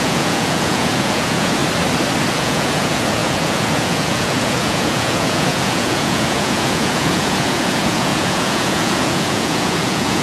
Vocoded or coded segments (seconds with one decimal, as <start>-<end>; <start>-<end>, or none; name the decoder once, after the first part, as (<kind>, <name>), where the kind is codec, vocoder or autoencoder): 0.0-1.6 (vocoder, Vocos); 2.3-10.2

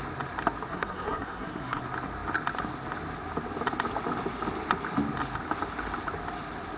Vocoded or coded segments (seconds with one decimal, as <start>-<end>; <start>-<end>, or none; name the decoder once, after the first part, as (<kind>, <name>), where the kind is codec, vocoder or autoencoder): 0.7-1.8 (codec, SNAC)

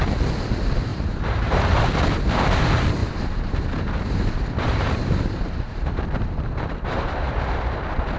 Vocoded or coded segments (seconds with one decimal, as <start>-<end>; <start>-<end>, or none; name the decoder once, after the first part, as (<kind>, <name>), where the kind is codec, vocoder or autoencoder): 0.9-1.8 (vocoder, BigVGAN v2); 3.0-7.5

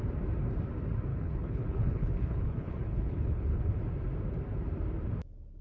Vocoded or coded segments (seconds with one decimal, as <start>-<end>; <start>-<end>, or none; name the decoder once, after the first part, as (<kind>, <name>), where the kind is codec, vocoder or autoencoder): 1.1-3.8 (codec, HILCodec)